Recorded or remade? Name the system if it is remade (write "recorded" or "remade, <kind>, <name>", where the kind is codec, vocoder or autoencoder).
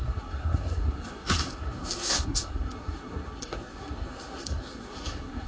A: remade, codec, SNAC